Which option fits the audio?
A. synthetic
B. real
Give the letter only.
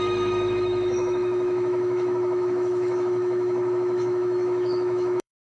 A